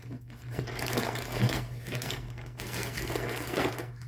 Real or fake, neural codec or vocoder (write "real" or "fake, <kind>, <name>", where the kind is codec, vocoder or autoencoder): fake, codec, SNAC